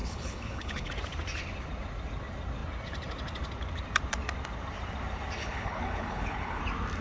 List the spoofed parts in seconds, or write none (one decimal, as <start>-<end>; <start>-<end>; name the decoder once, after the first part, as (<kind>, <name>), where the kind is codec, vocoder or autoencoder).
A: 0.0-0.9 (codec, HILCodec); 5.4-6.6